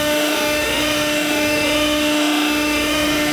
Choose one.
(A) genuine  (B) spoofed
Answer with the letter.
B